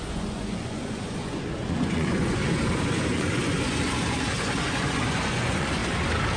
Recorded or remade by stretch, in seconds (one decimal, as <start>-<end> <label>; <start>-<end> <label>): 0.0-5.8 remade; 5.8-6.4 recorded